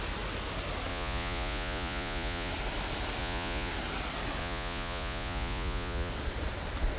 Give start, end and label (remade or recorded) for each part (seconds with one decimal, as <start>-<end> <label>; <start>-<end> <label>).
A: 0.0-0.9 recorded; 0.9-2.5 remade; 2.5-3.2 recorded; 3.2-3.7 remade; 3.7-4.4 recorded; 4.4-6.1 remade; 6.1-7.0 recorded